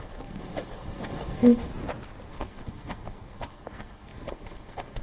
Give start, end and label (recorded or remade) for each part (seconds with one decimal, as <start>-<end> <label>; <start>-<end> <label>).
0.0-1.7 remade; 1.7-2.3 recorded; 2.3-5.0 remade